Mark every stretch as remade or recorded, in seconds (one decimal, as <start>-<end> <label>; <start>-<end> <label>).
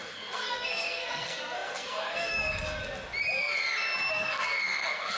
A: 0.0-2.8 remade; 2.8-4.1 recorded; 4.1-5.2 remade